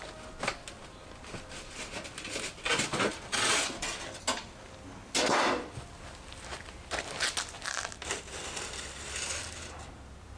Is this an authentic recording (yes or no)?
yes